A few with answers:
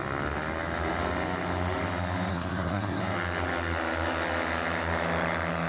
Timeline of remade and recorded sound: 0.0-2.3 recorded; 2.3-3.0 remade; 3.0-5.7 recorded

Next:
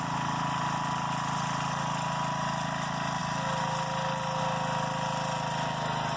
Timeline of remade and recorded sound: 0.0-6.2 recorded